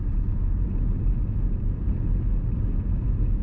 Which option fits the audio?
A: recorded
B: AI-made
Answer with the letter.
A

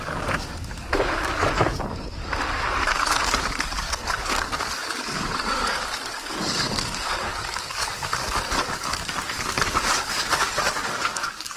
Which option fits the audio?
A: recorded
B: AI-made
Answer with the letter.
B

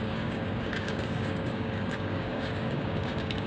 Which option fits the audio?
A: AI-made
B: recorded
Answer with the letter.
A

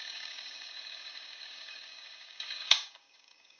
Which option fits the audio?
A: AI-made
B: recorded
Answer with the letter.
A